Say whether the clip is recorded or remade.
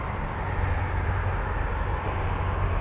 recorded